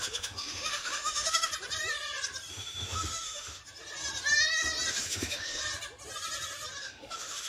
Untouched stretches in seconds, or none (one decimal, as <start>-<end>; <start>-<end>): 1.5-2.5; 3.6-4.9; 5.6-6.8